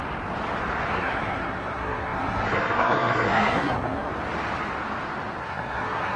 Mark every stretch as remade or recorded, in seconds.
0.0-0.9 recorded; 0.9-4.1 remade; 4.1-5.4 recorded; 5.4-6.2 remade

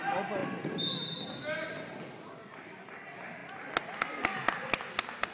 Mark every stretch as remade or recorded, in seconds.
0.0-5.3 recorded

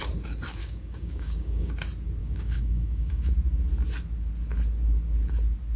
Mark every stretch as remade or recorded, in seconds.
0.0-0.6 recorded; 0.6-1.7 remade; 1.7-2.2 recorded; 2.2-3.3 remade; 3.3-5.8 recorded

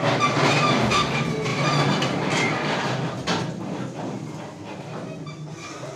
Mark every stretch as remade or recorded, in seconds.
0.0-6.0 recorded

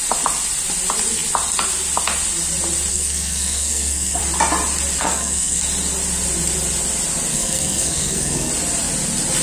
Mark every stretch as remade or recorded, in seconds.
0.0-2.9 recorded; 2.9-4.2 remade; 4.2-5.0 recorded; 5.0-5.6 remade; 5.6-7.3 recorded; 7.3-8.5 remade; 8.5-9.4 recorded

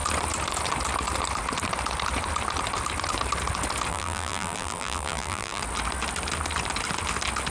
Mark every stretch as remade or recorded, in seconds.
0.0-3.9 recorded; 3.9-5.6 remade; 5.6-7.5 recorded

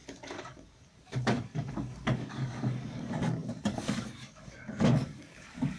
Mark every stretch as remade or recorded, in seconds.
0.0-5.8 remade